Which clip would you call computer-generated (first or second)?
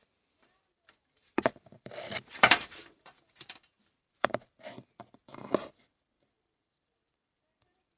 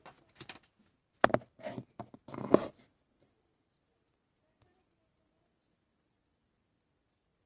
first